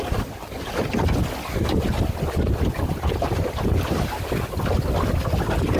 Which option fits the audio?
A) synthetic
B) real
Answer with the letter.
B